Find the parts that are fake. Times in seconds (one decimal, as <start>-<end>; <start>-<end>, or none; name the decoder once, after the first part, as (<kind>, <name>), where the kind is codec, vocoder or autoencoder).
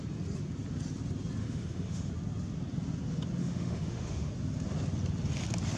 1.4-2.1 (autoencoder, DAC-VAE); 3.4-4.3